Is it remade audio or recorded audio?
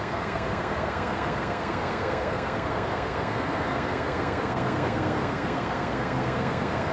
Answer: remade